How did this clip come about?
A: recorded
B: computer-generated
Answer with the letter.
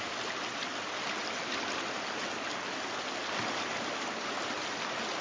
A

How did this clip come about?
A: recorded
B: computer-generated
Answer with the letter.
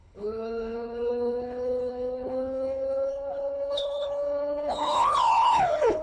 B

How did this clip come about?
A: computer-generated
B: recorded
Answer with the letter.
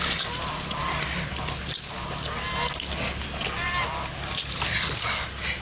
B